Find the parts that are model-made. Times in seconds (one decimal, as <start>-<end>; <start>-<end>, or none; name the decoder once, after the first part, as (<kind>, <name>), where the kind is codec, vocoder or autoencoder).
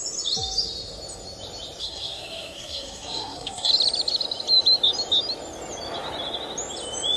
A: 1.8-3.7 (codec, SNAC)